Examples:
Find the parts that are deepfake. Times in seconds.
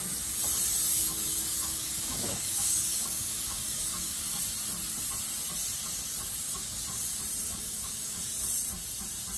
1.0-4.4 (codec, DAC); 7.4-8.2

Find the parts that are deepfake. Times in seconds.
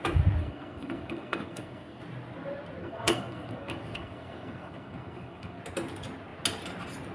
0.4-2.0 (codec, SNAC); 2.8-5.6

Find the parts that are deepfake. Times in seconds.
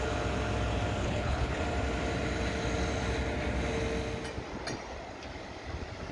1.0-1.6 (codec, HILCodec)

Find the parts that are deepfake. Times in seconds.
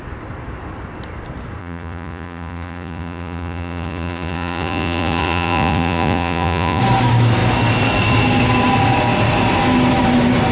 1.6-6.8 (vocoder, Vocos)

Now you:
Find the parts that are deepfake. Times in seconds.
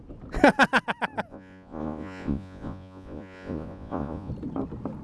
1.3-4.3 (vocoder, Vocos)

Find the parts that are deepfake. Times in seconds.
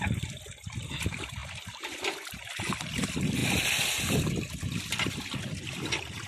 1.4-1.9 (vocoder, BigVGAN v2); 3.4-5.2